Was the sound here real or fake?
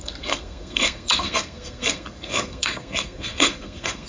fake